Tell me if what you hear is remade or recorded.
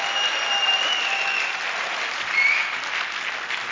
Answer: recorded